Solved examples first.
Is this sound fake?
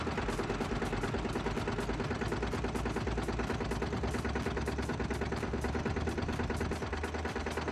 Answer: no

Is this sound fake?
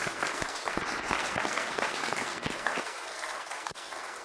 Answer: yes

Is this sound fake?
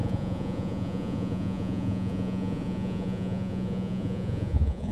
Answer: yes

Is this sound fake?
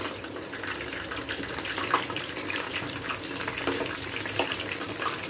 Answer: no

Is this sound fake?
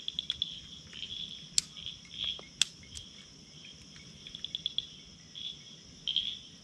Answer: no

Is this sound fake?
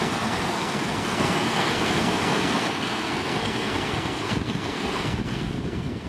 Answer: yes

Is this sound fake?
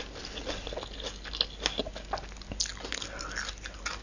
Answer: no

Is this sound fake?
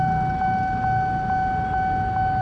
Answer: no